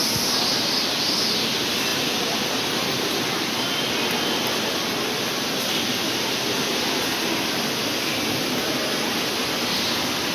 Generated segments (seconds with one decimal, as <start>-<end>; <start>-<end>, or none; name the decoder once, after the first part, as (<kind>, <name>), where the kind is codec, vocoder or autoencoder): none